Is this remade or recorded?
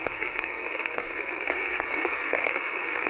remade